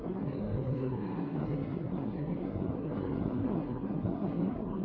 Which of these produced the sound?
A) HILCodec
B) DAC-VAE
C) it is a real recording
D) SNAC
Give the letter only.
D